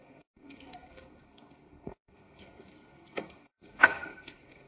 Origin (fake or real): fake